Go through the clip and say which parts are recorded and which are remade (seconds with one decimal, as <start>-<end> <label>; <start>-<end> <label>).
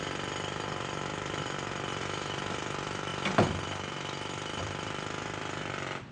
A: 0.0-3.1 remade; 3.1-4.6 recorded; 4.6-6.1 remade